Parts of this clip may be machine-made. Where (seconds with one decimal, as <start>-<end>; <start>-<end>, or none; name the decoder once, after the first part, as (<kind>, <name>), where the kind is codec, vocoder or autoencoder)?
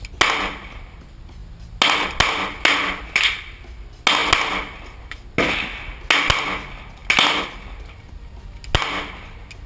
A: none